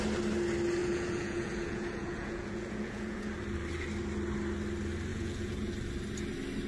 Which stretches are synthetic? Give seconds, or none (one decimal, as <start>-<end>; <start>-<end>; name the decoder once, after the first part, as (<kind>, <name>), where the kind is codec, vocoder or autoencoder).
0.8-3.3 (vocoder, Vocos); 5.1-5.7

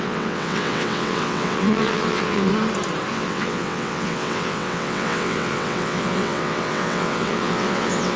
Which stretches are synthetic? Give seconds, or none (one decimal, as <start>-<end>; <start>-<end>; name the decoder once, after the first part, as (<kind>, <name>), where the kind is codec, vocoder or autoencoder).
0.0-2.5 (vocoder, WaveNeXt); 3.1-8.2